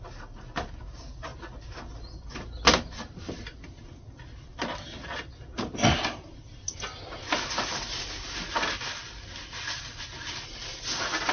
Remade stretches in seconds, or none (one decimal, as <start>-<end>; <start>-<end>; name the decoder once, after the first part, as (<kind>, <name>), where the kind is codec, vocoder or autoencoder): none